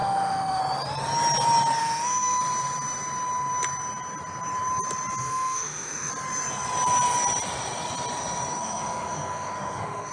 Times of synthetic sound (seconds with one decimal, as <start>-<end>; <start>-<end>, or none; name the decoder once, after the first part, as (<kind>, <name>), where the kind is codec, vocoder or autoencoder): 0.0-0.6 (autoencoder, DAC-VAE); 1.8-2.4; 5.2-6.1; 8.6-10.1